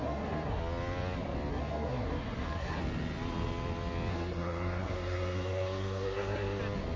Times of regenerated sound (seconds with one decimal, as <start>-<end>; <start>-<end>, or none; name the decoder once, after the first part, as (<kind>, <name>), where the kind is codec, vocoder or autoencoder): 0.0-0.6 (codec, SNAC); 1.5-2.8; 4.1-6.6

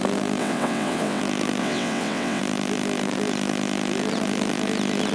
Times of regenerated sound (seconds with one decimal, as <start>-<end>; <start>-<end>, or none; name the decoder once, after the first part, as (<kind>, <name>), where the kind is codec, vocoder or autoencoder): 0.4-1.2 (vocoder, WaveNeXt); 1.6-2.4

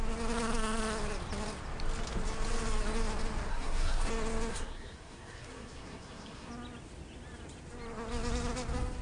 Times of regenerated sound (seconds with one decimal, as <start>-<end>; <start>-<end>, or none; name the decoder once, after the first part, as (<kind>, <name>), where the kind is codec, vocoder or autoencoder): 3.5-4.1 (codec, SNAC); 4.5-6.5

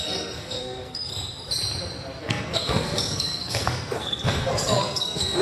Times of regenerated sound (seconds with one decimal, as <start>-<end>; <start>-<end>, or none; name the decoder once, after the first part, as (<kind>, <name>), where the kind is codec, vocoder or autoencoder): 0.0-1.1 (codec, SNAC); 2.2-5.4

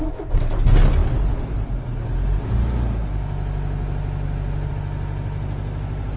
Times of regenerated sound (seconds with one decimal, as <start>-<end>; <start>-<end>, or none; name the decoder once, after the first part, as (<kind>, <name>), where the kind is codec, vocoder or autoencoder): none

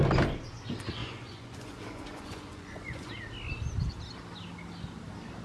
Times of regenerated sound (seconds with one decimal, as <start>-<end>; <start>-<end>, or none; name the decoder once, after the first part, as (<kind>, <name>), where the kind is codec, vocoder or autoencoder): 1.0-3.1 (vocoder, Vocos)

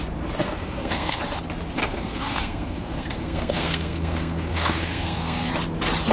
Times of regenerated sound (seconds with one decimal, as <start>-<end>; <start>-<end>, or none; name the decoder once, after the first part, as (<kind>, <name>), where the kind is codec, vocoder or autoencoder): 0.4-1.2 (codec, SNAC); 1.8-5.5

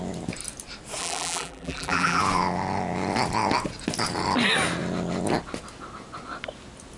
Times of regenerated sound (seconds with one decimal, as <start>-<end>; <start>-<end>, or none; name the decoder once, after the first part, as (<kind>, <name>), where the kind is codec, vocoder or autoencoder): 1.0-2.2 (vocoder, BigVGAN v2)